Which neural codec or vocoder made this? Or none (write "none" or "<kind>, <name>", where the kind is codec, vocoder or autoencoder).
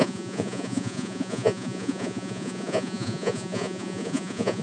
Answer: vocoder, Vocos